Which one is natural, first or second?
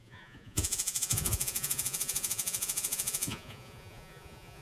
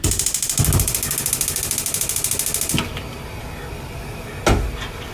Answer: second